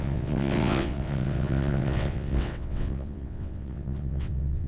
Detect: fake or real fake